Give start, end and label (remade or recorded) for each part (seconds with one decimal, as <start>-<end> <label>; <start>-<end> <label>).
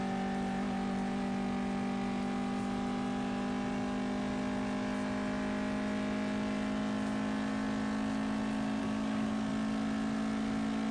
0.0-8.8 recorded; 8.8-9.5 remade; 9.5-10.9 recorded